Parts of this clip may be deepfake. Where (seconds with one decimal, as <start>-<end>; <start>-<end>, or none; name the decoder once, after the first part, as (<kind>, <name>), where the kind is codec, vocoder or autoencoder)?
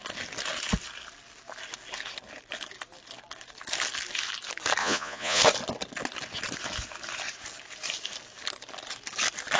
4.8-5.4 (vocoder, Vocos)